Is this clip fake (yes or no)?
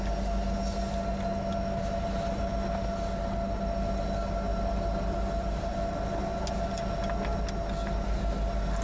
no